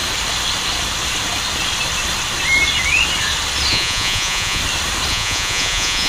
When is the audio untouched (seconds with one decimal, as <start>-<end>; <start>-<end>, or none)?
0.0-3.7; 4.6-5.1